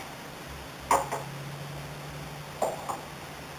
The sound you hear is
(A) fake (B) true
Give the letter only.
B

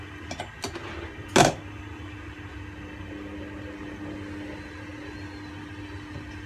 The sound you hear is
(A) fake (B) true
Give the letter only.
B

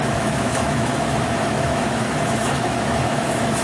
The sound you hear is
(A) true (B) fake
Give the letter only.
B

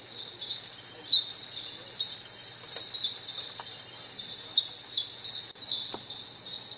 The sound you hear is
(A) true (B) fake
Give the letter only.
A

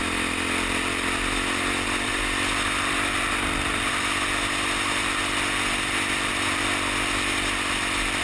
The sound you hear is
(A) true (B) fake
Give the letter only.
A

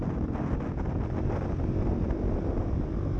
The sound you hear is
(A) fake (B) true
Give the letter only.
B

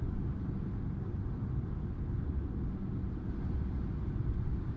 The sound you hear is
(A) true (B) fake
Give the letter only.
A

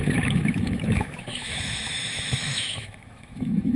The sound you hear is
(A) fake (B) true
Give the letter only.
A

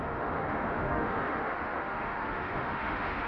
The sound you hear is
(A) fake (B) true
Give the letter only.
A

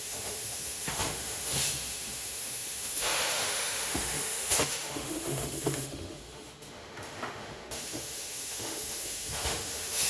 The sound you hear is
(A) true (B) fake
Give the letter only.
B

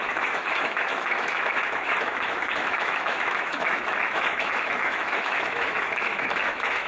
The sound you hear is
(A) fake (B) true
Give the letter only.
A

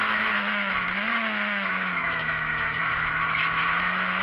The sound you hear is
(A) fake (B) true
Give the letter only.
A